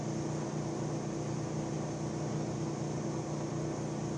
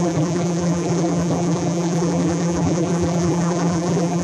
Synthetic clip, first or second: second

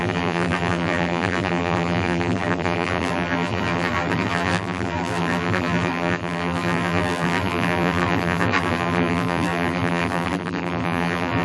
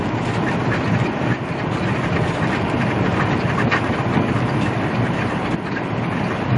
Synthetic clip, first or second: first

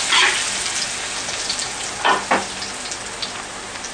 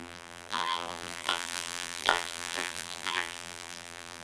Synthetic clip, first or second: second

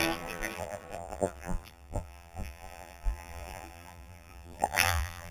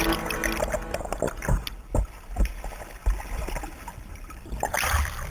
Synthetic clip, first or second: first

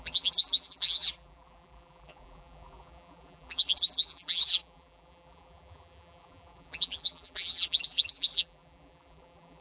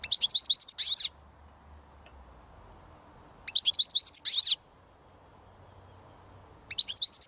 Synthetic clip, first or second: first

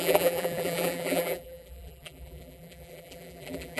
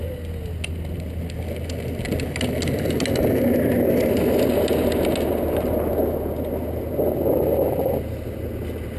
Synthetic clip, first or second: first